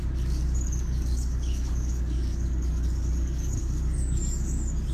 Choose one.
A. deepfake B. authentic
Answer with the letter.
A